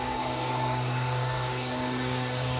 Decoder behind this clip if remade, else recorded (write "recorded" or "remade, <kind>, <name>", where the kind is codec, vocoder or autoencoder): remade, codec, DAC